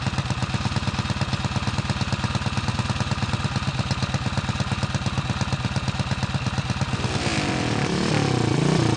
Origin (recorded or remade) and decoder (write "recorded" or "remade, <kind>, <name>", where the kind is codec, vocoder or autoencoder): recorded